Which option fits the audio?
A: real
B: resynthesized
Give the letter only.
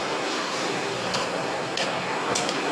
B